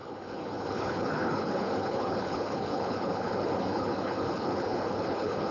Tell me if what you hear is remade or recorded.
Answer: remade